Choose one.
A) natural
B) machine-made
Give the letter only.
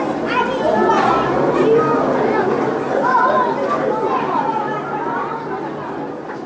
A